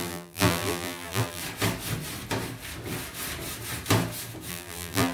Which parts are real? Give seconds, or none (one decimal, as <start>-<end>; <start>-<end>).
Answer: 1.4-4.5